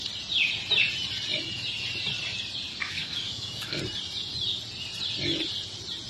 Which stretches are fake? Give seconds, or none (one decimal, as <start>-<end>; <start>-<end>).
2.7-3.8